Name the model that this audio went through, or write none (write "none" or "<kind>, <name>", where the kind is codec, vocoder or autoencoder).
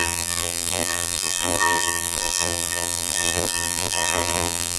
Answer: vocoder, BigVGAN v2